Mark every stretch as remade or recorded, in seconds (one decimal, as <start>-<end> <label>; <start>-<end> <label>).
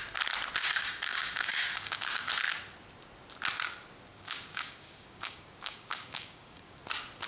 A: 0.0-0.6 recorded; 0.6-2.3 remade; 2.3-4.1 recorded; 4.1-6.8 remade; 6.8-7.3 recorded